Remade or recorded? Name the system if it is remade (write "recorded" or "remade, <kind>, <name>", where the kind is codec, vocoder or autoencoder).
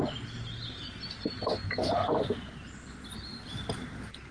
recorded